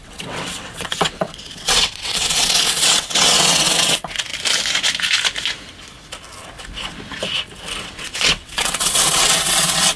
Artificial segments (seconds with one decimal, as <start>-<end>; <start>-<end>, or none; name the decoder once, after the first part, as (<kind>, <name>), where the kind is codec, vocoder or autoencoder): 0.0-4.3 (vocoder, WaveNeXt); 7.8-10.0